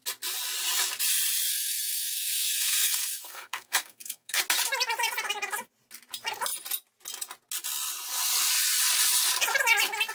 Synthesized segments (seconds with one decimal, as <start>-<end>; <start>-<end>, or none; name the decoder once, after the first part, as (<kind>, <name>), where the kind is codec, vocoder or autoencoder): 1.5-4.4 (codec, SNAC)